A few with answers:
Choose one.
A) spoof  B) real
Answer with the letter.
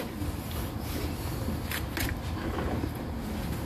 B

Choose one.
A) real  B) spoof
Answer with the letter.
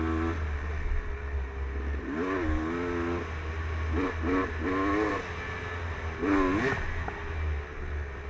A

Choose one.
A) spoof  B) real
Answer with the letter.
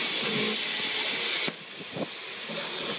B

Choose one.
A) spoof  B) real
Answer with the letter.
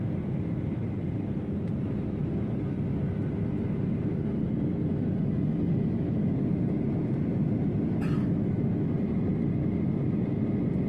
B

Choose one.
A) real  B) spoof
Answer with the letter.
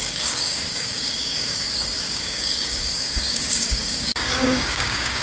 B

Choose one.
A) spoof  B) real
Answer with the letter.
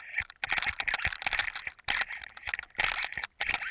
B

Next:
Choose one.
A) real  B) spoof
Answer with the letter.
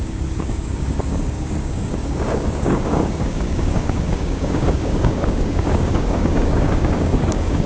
B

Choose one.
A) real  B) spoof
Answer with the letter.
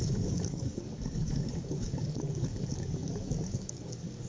B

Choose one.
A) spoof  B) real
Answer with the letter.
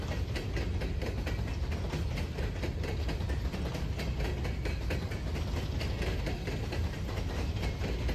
B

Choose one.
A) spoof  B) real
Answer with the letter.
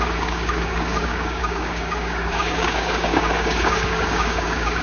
A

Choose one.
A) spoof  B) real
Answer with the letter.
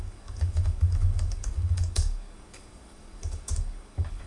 A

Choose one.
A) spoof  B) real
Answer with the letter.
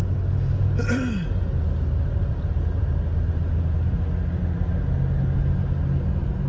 B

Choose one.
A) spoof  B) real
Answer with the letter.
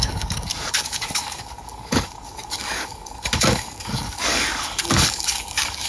A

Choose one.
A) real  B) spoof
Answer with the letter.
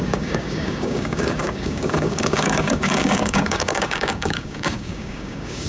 B